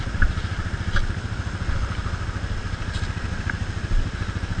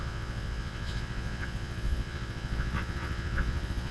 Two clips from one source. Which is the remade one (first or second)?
second